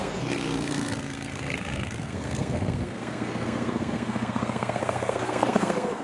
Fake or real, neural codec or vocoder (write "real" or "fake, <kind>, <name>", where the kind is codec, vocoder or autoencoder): fake, codec, SNAC